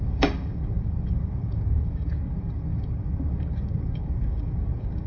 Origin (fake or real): fake